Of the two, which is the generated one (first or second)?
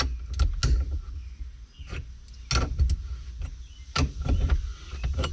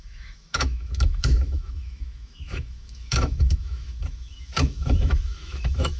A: second